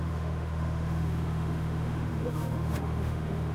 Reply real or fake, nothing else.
fake